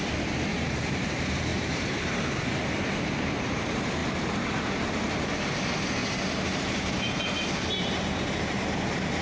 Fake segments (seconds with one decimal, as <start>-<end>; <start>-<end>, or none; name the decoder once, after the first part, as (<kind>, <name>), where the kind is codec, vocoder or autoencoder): 0.5-1.1 (vocoder, BigVGAN v2); 1.5-2.2; 6.0-9.2